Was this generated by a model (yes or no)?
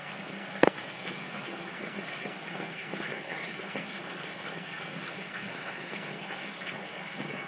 yes